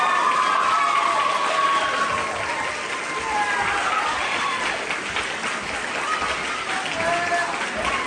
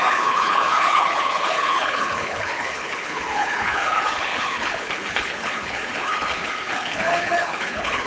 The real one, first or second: first